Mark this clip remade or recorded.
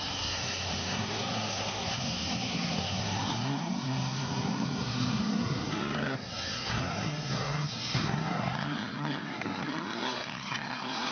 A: remade